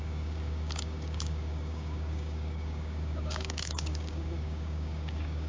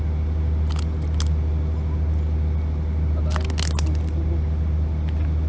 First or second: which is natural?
second